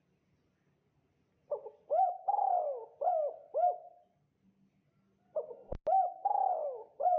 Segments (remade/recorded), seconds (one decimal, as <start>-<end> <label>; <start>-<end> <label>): 0.0-7.2 recorded

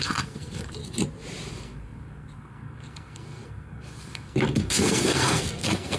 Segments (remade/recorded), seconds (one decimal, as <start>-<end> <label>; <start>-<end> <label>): 0.0-0.8 remade; 0.8-1.5 recorded; 1.5-6.0 remade